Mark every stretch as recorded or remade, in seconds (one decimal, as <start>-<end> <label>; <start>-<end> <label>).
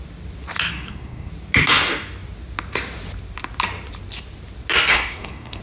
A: 0.0-0.7 recorded; 0.7-1.3 remade; 1.3-4.9 recorded; 4.9-5.6 remade